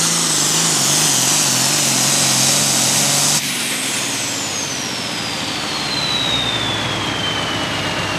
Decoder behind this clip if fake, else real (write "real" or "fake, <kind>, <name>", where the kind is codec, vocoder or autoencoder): real